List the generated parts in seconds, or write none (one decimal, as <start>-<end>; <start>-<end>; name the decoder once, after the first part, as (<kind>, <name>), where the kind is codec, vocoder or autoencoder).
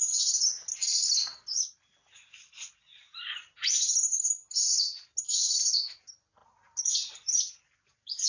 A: none